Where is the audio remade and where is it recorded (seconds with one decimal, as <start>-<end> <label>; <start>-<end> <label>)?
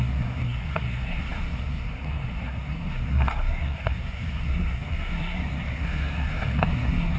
0.0-7.2 remade